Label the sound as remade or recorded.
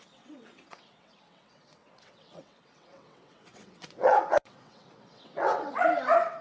remade